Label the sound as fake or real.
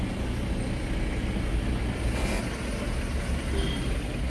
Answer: real